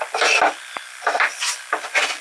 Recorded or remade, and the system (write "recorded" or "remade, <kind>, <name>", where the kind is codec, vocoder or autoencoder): recorded